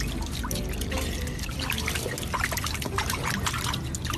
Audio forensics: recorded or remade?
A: recorded